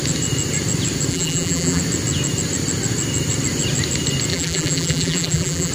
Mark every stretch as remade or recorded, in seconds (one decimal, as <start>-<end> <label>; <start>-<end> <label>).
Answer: 0.0-1.1 recorded; 1.1-1.8 remade; 1.8-4.3 recorded; 4.3-5.7 remade